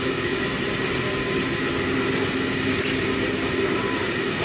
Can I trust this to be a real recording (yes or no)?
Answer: yes